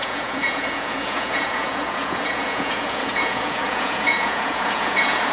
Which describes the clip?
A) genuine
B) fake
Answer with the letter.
B